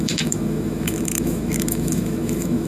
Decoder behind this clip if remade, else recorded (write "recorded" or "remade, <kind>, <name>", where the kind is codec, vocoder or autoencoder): remade, autoencoder, DAC-VAE